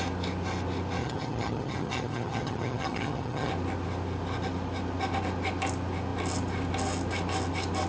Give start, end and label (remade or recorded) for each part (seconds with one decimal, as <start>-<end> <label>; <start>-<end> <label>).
0.0-1.0 recorded; 1.0-3.5 remade; 3.5-7.9 recorded